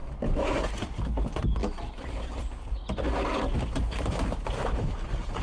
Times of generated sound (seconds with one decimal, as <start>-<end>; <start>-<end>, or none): none